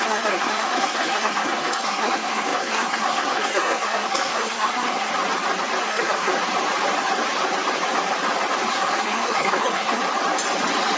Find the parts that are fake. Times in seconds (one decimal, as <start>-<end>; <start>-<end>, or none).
0.0-5.1; 5.8-6.3; 8.7-10.0